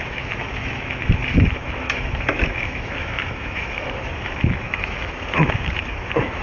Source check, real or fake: fake